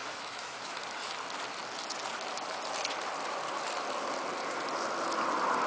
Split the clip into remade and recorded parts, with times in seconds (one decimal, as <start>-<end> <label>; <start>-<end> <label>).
0.0-0.8 remade; 0.8-5.7 recorded